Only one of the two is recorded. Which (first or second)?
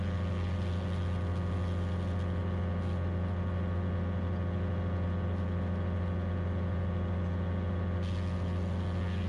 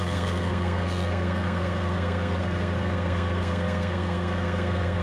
first